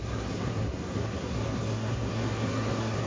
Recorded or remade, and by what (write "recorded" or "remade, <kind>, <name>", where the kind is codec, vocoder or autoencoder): remade, codec, SNAC